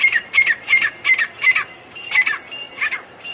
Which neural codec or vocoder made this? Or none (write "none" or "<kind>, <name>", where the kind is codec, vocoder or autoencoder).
none